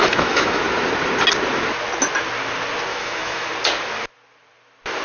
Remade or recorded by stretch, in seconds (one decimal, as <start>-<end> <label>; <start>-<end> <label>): 0.0-0.6 remade; 0.6-2.9 recorded; 2.9-3.5 remade; 3.5-5.0 recorded